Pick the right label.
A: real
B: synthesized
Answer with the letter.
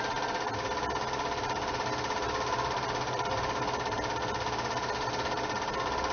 A